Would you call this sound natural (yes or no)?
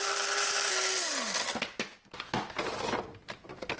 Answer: yes